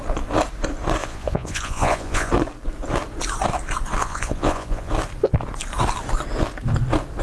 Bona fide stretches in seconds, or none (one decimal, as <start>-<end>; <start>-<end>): 0.0-1.0; 2.3-4.0; 4.9-7.2